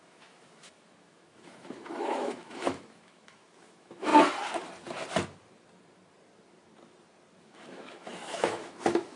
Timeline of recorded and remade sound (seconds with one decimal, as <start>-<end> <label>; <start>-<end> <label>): 0.0-4.1 remade; 4.1-7.4 recorded; 7.4-9.2 remade